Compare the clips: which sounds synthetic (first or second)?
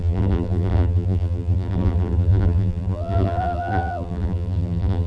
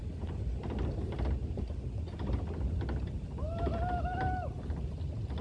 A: first